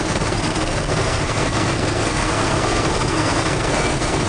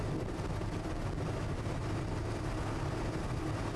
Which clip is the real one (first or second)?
second